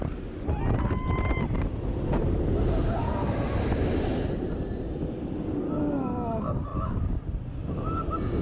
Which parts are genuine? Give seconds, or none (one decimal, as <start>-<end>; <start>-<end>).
0.0-8.4